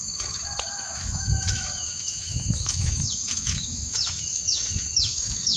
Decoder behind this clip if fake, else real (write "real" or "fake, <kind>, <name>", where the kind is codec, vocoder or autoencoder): fake, autoencoder, DAC-VAE